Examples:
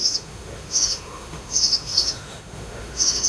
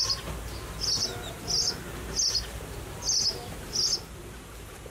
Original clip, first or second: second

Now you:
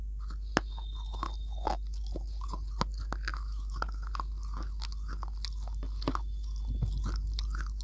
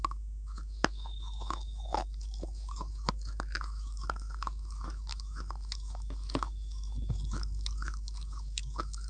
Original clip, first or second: first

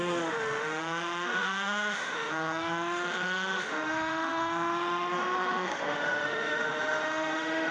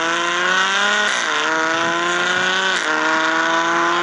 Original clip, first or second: second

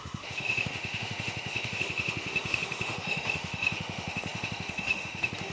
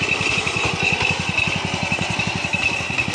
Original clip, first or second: second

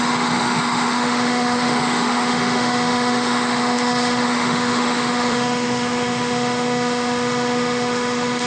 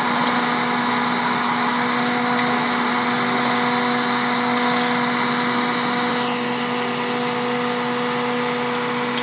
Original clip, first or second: second